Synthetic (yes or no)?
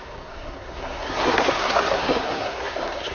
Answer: yes